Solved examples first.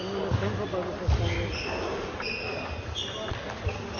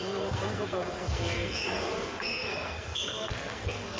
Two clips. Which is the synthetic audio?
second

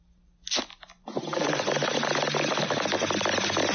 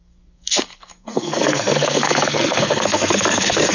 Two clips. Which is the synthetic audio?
second